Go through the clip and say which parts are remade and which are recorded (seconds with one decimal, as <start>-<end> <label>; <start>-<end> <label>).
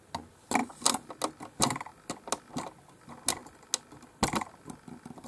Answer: 0.0-5.3 recorded